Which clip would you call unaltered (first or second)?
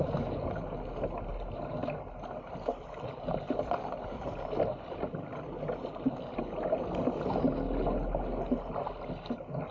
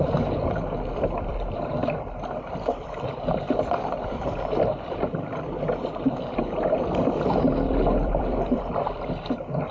first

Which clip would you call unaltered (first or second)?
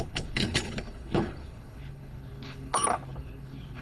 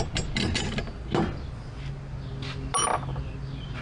second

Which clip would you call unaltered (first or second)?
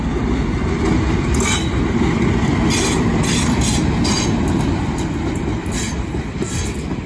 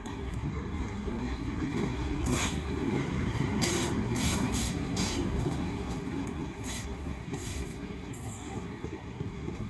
first